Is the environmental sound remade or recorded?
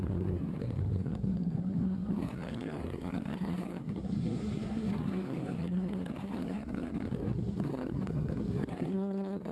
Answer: remade